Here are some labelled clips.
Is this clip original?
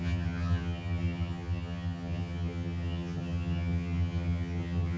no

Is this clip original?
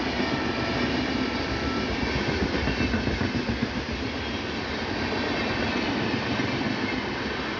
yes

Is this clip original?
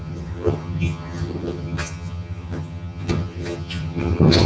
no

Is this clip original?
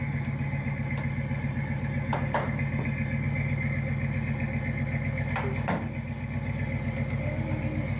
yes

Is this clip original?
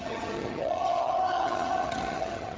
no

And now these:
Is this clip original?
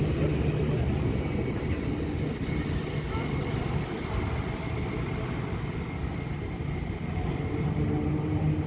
yes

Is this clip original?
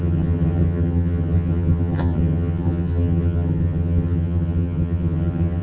no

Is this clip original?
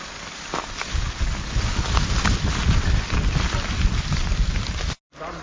yes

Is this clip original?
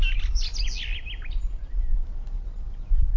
yes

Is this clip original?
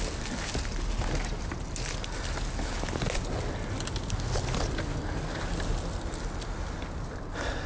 yes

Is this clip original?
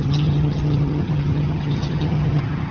no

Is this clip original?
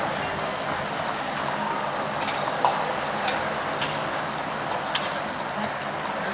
yes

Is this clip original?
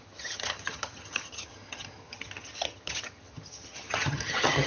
no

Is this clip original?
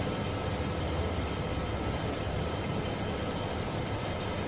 yes